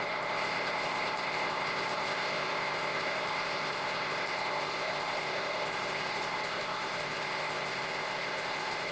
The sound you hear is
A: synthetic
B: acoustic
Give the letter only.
A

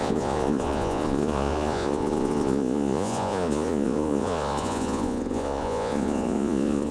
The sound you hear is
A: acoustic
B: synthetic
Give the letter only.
B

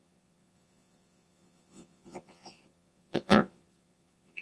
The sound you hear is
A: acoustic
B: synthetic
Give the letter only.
B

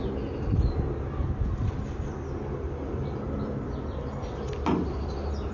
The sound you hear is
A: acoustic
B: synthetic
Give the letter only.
A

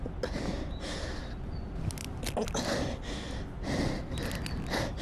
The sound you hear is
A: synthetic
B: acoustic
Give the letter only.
B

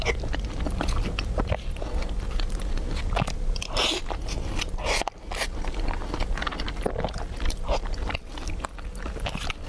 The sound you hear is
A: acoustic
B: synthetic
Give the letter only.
A